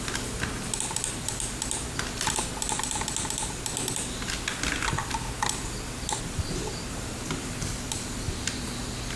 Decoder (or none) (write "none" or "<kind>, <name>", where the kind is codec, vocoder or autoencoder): none